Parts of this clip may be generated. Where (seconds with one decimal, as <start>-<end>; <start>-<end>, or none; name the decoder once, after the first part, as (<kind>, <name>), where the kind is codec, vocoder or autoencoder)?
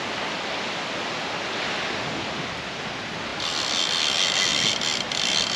none